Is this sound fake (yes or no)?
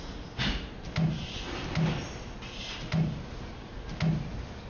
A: no